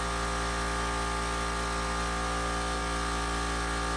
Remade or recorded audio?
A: recorded